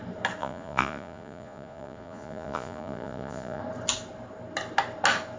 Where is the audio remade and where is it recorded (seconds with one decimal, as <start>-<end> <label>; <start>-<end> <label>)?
0.0-0.4 recorded; 0.4-3.6 remade; 3.6-5.4 recorded